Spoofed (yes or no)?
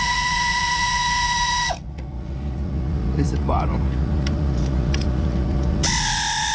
yes